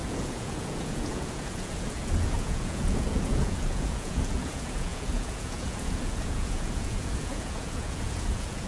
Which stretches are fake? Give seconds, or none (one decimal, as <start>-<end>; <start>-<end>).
0.0-8.7